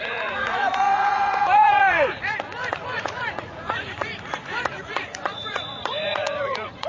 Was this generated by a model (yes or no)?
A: yes